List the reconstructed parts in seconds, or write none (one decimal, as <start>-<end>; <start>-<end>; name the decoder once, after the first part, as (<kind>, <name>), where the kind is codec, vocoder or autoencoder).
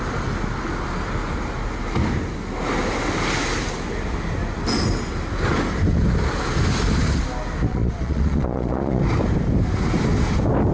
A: 7.7-9.0 (vocoder, Vocos)